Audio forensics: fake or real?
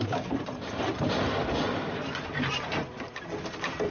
fake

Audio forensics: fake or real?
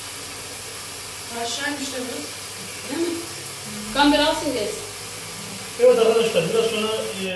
real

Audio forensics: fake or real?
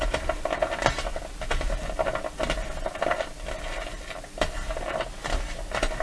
real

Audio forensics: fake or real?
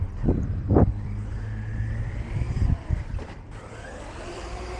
real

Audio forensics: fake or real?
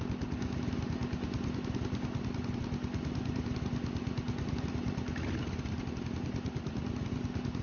real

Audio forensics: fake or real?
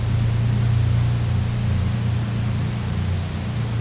real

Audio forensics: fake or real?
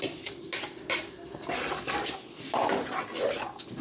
real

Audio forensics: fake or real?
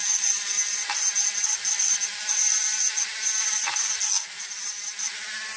real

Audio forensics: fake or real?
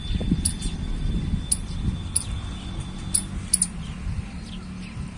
real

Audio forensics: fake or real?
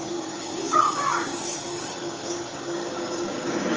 fake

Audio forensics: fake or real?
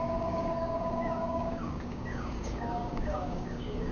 fake